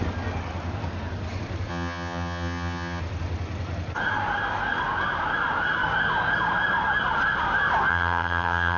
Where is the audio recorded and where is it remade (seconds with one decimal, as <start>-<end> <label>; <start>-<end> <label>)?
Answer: 0.0-1.7 recorded; 1.7-3.0 remade; 3.0-7.9 recorded; 7.9-8.8 remade